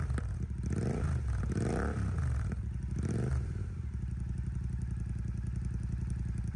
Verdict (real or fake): fake